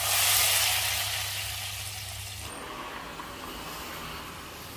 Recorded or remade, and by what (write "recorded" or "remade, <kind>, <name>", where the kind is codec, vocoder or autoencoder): recorded